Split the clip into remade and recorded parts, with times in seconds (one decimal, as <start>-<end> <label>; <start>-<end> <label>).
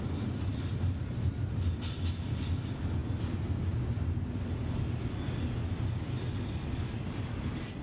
0.0-7.8 recorded